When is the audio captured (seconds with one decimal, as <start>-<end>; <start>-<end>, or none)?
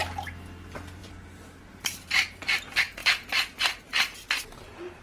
0.0-1.0; 2.6-5.0